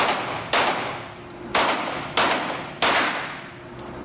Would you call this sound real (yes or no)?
yes